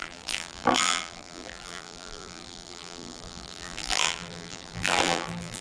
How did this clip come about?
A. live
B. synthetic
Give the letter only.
B